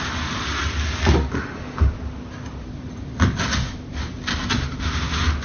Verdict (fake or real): real